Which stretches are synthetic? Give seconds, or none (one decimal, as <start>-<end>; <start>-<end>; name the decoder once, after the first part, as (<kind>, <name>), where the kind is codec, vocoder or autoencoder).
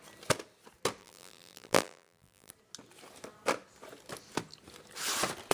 1.0-2.5 (vocoder, BigVGAN v2)